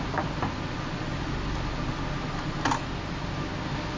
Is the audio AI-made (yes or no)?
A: no